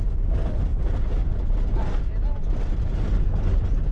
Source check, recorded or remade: recorded